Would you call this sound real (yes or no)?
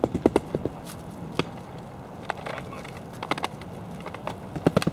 yes